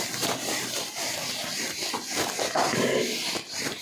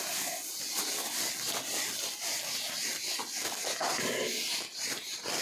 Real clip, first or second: second